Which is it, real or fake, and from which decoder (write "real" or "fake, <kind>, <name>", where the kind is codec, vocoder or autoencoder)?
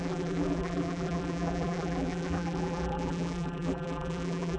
fake, vocoder, BigVGAN v2